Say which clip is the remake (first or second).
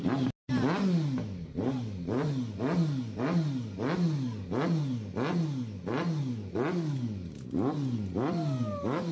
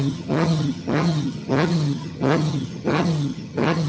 second